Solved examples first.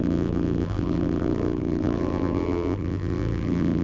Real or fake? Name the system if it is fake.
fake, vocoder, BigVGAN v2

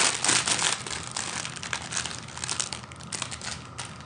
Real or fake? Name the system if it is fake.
real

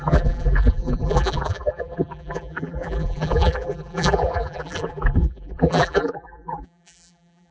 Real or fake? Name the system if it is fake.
fake, vocoder, BigVGAN v2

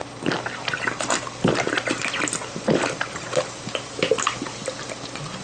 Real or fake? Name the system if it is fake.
real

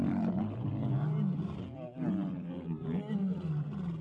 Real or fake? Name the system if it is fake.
real